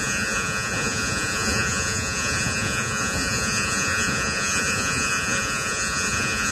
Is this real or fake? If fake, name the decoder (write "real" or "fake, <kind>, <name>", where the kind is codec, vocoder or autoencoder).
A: fake, vocoder, Vocos